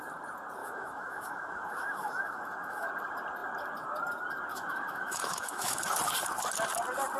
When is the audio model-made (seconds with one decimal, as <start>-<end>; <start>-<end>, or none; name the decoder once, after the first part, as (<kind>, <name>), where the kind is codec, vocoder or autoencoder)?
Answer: 0.6-2.9 (autoencoder, DAC-VAE); 4.5-5.8